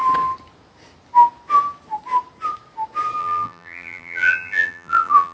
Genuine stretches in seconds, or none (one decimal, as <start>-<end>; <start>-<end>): 0.0-3.2

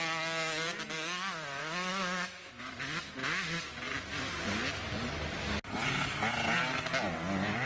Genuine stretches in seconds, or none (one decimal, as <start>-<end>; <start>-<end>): 0.0-1.6; 2.7-7.7

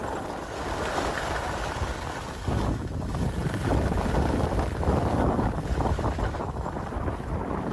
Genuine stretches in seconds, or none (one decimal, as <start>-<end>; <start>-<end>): 2.2-3.4; 7.0-7.7

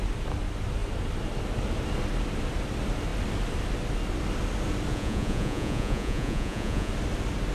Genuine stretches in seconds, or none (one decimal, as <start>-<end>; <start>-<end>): 0.0-4.9; 6.9-7.5

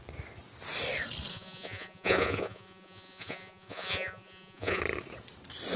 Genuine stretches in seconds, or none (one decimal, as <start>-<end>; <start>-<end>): 0.0-1.3; 4.8-5.8

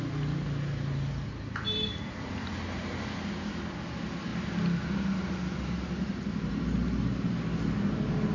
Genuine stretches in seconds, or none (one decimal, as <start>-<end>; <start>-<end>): 0.0-1.1; 2.3-8.3

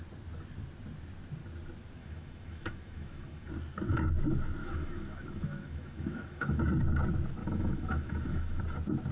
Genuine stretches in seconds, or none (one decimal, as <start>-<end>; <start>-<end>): 0.0-2.0; 3.5-4.6; 6.6-7.4; 8.6-9.1

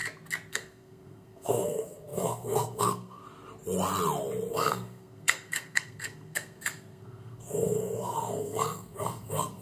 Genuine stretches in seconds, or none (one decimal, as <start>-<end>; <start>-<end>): 0.0-0.5; 3.2-4.5